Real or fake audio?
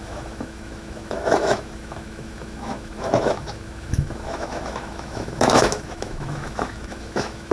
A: fake